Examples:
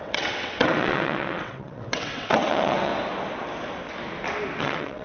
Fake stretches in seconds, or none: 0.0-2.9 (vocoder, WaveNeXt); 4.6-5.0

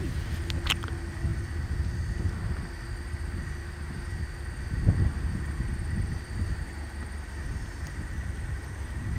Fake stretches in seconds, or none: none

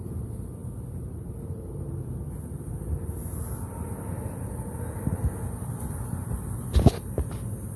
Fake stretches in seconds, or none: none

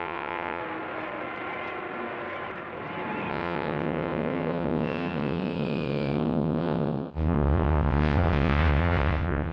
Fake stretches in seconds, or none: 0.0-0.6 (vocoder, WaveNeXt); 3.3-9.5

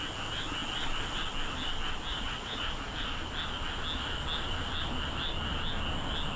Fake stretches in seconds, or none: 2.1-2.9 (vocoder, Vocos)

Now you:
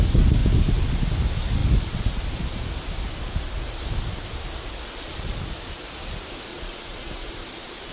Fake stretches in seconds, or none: 6.5-7.3 (vocoder, WaveNeXt)

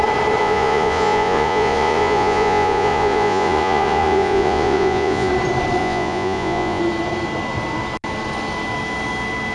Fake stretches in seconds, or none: 0.4-5.3 (vocoder, Vocos); 5.8-6.8

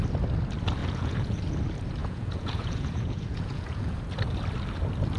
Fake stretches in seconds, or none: 0.8-1.4 (vocoder, Vocos); 2.0-4.0